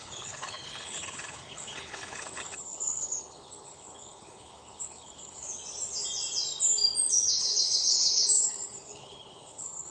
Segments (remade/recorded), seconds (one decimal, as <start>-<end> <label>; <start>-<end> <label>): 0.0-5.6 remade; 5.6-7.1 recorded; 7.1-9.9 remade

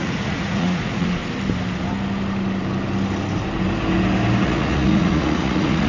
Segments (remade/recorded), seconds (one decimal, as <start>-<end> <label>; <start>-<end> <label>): 0.0-1.2 remade; 1.2-4.4 recorded; 4.4-5.9 remade

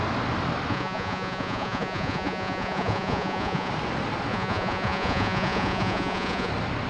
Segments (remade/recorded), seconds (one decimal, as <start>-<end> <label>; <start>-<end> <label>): 0.0-0.7 recorded; 0.7-3.7 remade; 3.7-4.3 recorded; 4.3-6.5 remade; 6.5-6.9 recorded

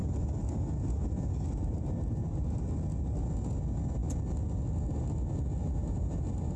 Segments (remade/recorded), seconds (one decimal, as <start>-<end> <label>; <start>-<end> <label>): 0.0-2.6 remade; 2.6-5.6 recorded; 5.6-6.6 remade

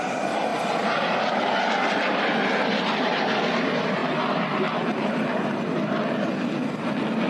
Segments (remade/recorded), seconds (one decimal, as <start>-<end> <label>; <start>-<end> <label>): 0.0-0.5 recorded; 0.5-1.1 remade; 1.1-7.3 recorded

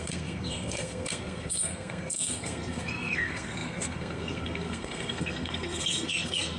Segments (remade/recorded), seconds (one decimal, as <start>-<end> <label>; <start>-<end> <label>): 0.0-6.6 remade

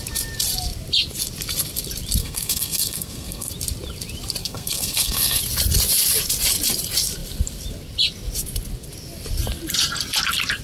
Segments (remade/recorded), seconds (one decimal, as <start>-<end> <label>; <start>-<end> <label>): 0.0-2.2 recorded; 2.2-3.5 remade; 3.5-4.4 recorded; 4.4-5.4 remade; 5.4-10.6 recorded

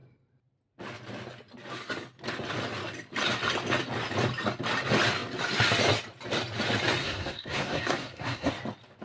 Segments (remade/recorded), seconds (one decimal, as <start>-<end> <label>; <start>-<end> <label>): 0.0-7.0 recorded; 7.0-8.5 remade; 8.5-9.0 recorded